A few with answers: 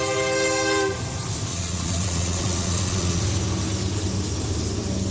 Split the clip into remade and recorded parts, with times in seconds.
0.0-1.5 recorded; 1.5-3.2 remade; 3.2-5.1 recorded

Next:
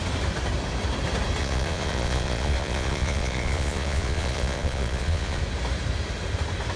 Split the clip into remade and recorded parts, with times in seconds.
0.0-1.4 recorded; 1.4-5.4 remade; 5.4-6.8 recorded

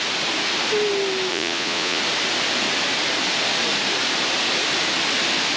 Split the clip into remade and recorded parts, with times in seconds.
0.0-1.3 recorded; 1.3-2.0 remade; 2.0-5.6 recorded